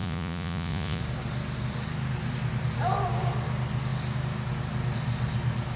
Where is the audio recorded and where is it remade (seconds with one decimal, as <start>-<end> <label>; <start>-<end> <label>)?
0.0-1.0 remade; 1.0-5.8 recorded